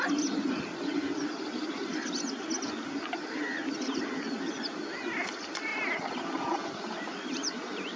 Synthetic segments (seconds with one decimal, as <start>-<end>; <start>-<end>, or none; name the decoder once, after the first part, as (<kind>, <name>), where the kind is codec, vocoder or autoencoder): none